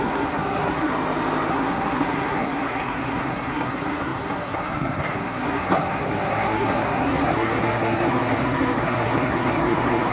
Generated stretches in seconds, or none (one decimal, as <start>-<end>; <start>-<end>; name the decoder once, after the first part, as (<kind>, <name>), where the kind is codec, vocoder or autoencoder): 0.0-0.9 (codec, SNAC); 1.5-10.1